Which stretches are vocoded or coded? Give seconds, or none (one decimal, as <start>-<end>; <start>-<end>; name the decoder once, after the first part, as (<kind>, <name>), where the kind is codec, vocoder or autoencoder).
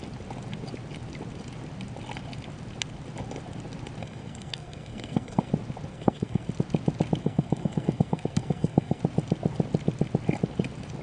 4.0-5.5 (codec, SNAC); 5.9-6.5; 7.2-9.0